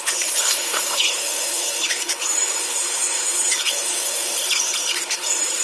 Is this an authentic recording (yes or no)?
no